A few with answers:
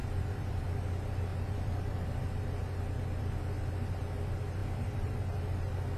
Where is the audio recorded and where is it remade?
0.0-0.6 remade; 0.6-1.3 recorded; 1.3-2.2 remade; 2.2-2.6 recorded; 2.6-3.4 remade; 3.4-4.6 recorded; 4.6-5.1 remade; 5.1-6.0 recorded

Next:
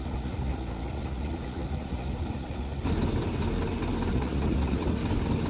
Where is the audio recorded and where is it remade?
0.0-2.8 remade; 2.8-4.1 recorded; 4.1-5.0 remade; 5.0-5.5 recorded

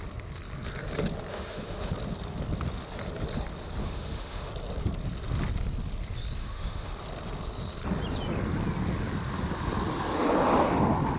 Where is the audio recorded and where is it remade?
0.0-1.3 recorded; 1.3-1.9 remade; 1.9-3.8 recorded; 3.8-4.5 remade; 4.5-6.4 recorded; 6.4-6.9 remade; 6.9-11.2 recorded

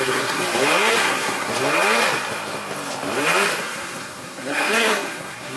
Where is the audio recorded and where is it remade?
0.0-0.4 remade; 0.4-0.9 recorded; 0.9-1.5 remade; 1.5-3.6 recorded; 3.6-5.6 remade

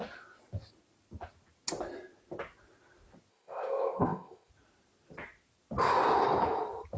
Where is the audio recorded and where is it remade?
0.0-3.3 recorded; 3.3-4.5 remade; 4.5-7.0 recorded

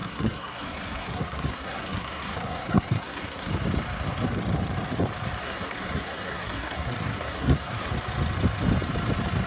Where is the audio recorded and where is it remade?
0.0-3.5 remade; 3.5-5.4 recorded; 5.4-7.9 remade; 7.9-9.5 recorded